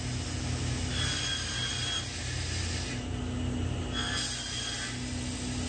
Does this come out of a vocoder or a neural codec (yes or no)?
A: no